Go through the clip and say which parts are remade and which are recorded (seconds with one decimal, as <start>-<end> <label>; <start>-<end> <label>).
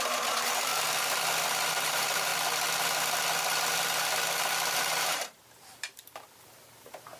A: 0.0-0.7 remade; 0.7-1.7 recorded; 1.7-2.3 remade; 2.3-4.8 recorded; 4.8-7.2 remade